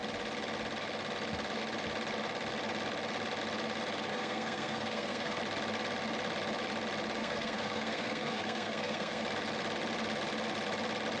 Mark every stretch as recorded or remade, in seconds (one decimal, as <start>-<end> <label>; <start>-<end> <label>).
0.0-4.1 recorded; 4.1-5.4 remade; 5.4-7.2 recorded; 7.2-9.2 remade; 9.2-11.2 recorded